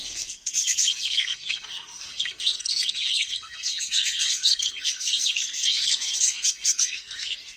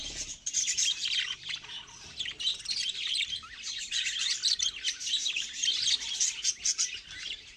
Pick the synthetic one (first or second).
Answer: first